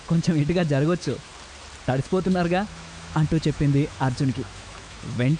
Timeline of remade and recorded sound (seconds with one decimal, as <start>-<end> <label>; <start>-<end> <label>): 0.0-1.3 remade; 1.3-1.9 recorded; 1.9-5.4 remade